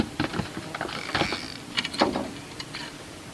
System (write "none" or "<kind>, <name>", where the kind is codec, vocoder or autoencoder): vocoder, BigVGAN v2